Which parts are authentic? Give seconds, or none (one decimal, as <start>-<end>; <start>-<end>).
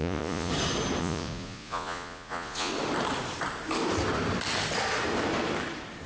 0.5-1.0; 2.7-6.1